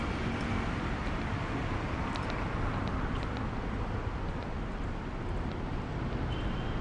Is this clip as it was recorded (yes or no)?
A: yes